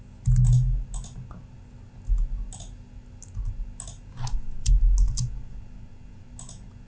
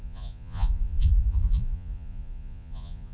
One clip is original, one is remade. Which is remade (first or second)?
second